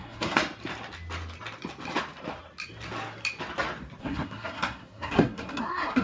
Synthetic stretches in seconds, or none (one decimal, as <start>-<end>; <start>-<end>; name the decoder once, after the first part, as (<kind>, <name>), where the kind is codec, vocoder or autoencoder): 0.0-0.4 (codec, SNAC); 4.0-6.0